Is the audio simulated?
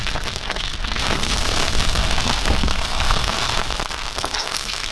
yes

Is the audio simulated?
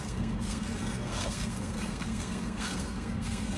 yes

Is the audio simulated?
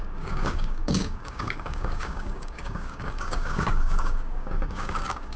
yes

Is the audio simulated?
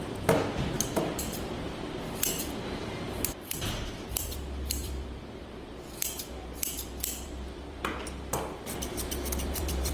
yes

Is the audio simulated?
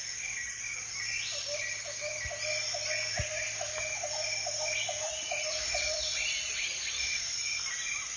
no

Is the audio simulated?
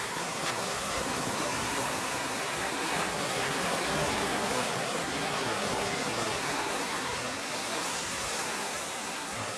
yes